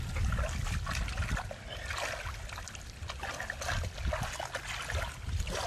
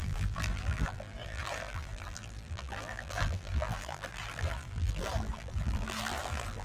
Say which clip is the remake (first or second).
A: second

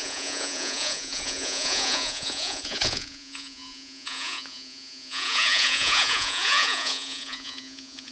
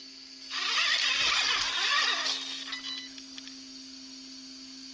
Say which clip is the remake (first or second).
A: first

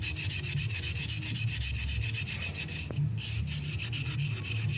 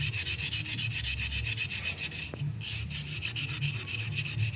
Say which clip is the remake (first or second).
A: first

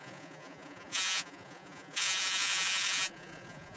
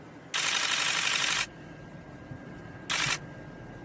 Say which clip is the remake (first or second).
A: first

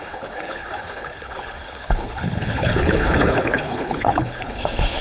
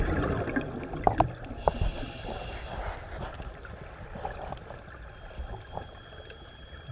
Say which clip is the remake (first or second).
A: first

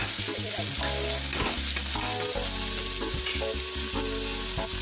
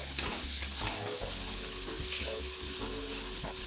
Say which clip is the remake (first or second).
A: second